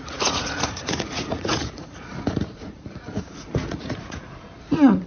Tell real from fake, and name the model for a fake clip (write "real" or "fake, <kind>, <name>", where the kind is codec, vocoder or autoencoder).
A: fake, vocoder, Vocos